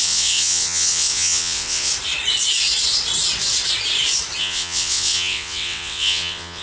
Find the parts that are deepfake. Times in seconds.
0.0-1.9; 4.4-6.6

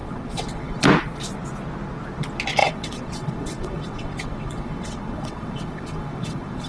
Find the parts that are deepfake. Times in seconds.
0.0-0.8; 2.6-6.7

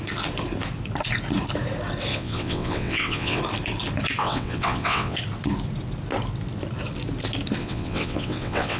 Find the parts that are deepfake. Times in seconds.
2.1-3.4; 4.2-5.2; 7.6-8.8

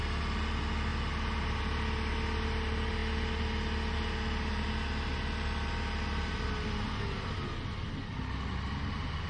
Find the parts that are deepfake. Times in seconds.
none